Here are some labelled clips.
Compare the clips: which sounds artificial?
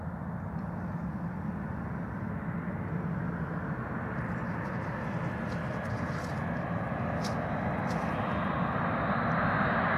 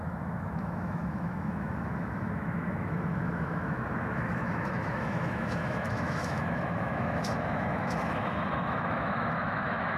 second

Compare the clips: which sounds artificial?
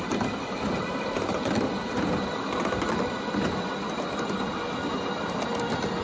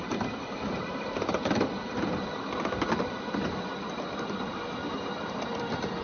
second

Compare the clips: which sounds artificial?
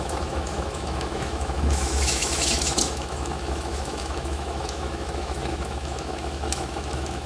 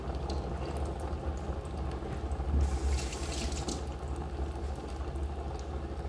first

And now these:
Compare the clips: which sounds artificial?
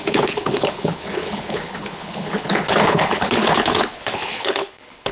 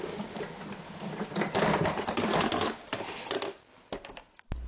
first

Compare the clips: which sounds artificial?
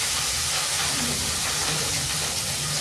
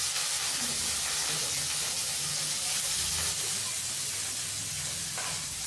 first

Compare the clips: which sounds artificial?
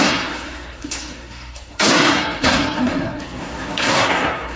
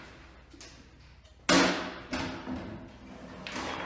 first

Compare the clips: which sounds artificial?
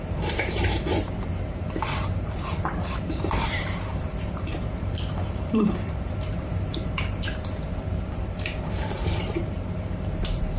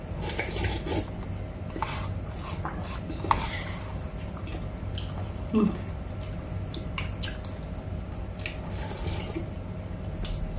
first